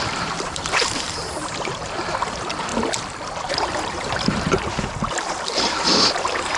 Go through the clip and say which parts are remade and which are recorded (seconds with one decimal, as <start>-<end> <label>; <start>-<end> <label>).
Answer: 0.0-2.7 remade; 2.7-3.5 recorded; 3.5-6.6 remade